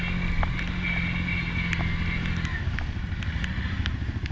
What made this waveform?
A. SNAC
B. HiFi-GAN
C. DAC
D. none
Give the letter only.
D